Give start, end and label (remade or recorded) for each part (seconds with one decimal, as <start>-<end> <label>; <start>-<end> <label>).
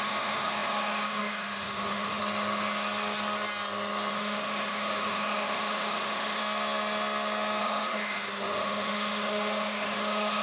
0.0-2.2 remade; 2.2-4.1 recorded; 4.1-6.4 remade; 6.4-7.6 recorded; 7.6-10.4 remade